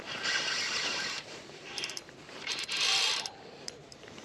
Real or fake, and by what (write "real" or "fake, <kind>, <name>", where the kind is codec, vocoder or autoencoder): fake, vocoder, BigVGAN v2